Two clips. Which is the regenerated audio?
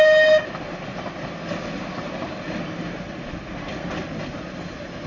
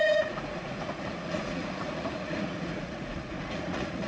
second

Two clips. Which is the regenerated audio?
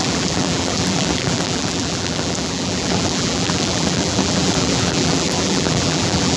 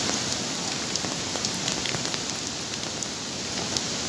first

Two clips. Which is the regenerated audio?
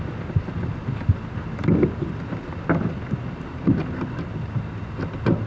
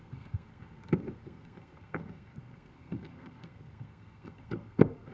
second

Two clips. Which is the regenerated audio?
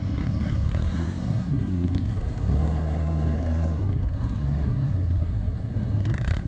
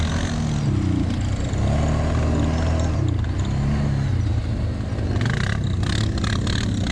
first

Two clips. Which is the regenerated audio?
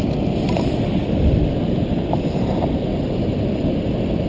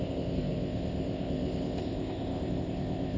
second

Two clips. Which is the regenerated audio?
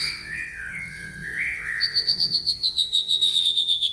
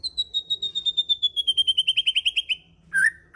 first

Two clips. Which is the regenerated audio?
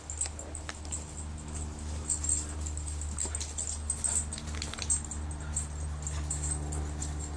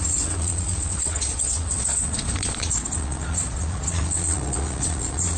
second